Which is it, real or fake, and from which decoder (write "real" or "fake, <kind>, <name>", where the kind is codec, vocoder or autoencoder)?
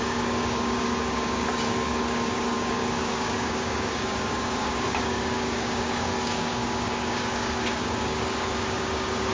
fake, codec, DAC